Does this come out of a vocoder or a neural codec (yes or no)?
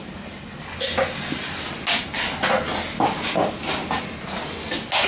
no